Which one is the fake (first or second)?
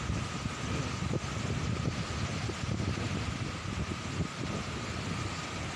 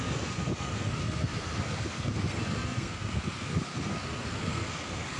second